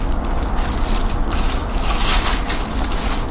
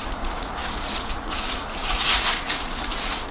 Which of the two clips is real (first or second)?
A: first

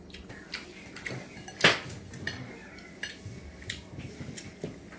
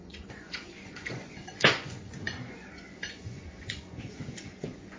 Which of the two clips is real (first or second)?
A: first